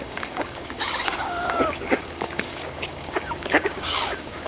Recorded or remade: remade